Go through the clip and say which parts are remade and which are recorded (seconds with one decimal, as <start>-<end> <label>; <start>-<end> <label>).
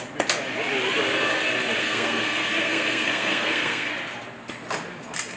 0.0-1.8 recorded; 1.8-3.9 remade; 3.9-5.4 recorded